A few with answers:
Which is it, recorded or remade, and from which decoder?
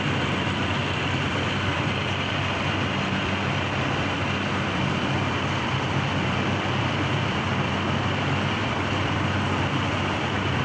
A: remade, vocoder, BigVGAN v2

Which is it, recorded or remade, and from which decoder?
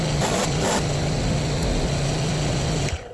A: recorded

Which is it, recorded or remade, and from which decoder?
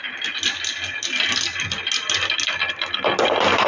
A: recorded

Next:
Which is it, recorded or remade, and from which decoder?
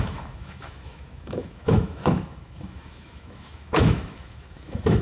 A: remade, autoencoder, DAC-VAE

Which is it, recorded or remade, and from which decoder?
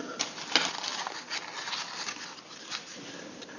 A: recorded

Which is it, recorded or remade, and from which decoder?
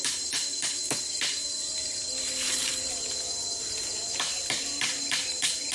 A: recorded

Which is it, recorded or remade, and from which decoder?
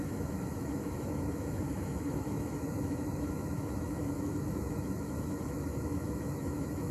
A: remade, autoencoder, DAC-VAE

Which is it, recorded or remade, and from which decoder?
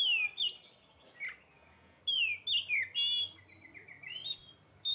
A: recorded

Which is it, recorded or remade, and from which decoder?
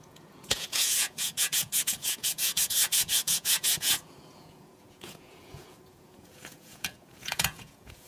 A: remade, vocoder, Vocos